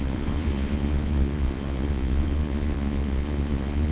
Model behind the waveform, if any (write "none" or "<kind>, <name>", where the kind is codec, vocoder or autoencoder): vocoder, Vocos